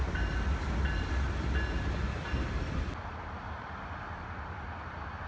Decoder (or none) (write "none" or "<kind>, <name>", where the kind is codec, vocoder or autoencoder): none